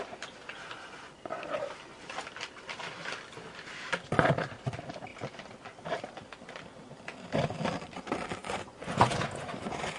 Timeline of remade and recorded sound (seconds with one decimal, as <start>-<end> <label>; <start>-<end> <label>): 0.0-0.4 recorded; 0.4-1.4 remade; 1.4-8.4 recorded; 8.4-10.0 remade